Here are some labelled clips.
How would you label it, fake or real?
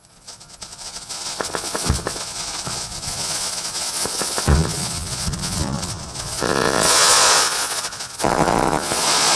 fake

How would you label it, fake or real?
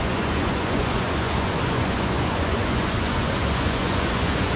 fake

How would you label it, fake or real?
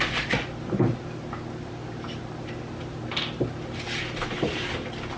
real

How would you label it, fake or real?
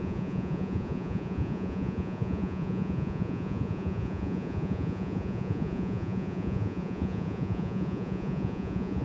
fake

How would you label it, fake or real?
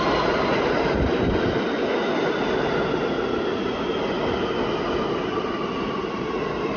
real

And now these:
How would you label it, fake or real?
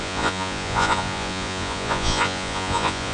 fake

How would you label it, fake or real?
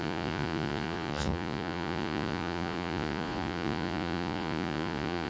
fake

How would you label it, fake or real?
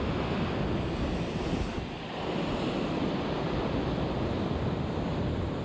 real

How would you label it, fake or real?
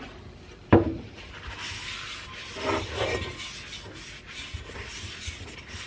real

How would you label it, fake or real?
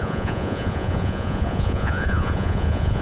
fake